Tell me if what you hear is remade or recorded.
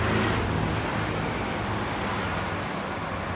recorded